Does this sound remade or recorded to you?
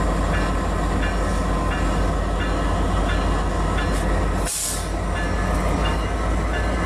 recorded